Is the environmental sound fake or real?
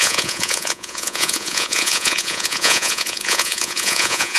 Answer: fake